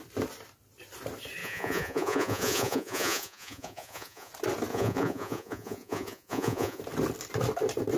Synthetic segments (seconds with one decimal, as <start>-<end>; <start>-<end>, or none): 1.4-4.3; 4.7-6.8